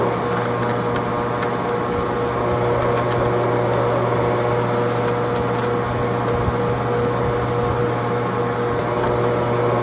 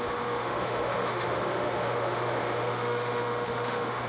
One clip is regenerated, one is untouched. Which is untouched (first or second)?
first